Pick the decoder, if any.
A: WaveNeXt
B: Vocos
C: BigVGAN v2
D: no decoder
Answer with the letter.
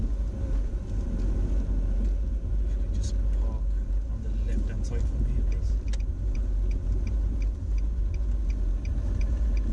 D